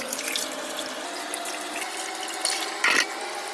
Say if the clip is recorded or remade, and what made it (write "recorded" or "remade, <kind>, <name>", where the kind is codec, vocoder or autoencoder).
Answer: recorded